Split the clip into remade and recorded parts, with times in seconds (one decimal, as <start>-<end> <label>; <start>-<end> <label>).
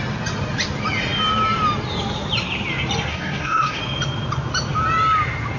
0.0-3.1 recorded; 3.1-3.8 remade; 3.8-5.6 recorded